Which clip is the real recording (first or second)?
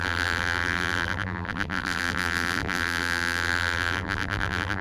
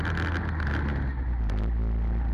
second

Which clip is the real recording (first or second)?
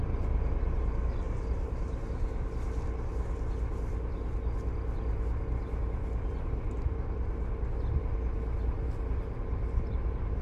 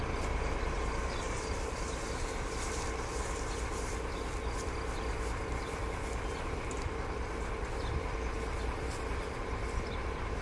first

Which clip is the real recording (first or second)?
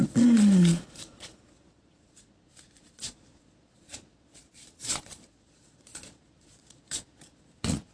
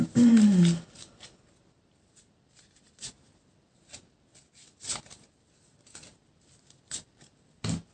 second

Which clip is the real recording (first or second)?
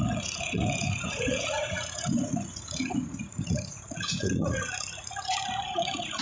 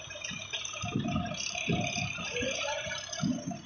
second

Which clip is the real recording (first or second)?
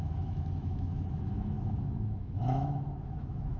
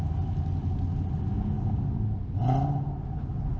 second